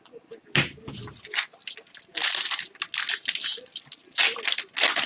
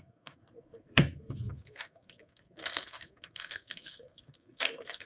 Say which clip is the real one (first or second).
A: first